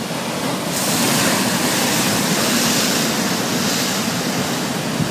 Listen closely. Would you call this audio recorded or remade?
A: recorded